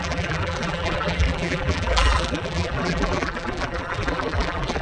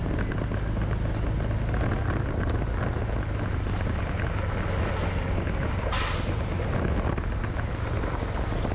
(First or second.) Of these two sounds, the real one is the second